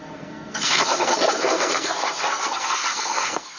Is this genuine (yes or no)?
no